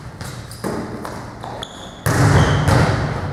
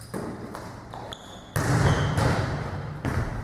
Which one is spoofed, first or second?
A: second